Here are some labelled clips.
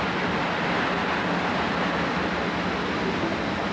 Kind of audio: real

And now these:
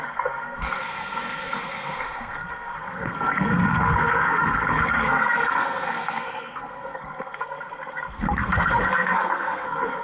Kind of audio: fake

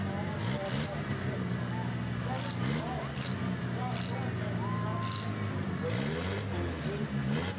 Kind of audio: real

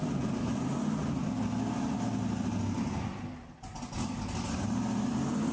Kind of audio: real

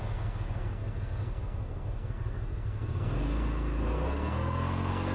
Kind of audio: fake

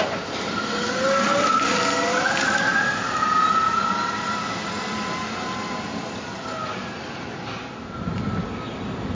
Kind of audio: real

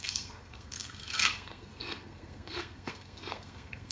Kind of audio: fake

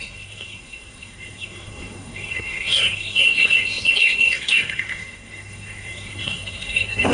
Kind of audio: fake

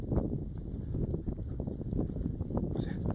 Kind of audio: real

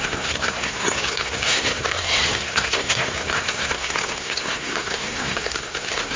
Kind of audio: fake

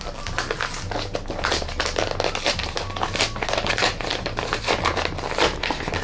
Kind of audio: real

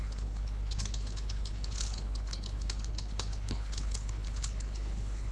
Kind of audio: fake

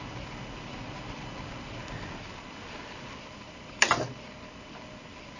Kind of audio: real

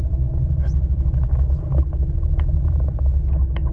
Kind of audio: real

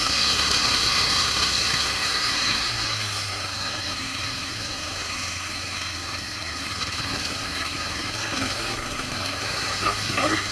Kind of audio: fake